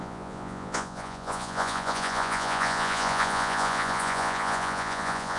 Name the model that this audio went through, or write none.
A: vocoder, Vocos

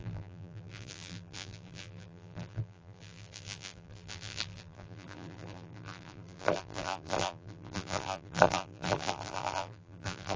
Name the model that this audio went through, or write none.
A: vocoder, BigVGAN v2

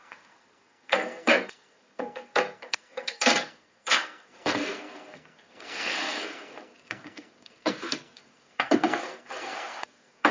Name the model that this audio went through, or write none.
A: codec, SNAC